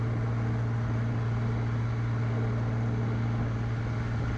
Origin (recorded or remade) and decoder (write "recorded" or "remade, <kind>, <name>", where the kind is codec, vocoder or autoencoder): recorded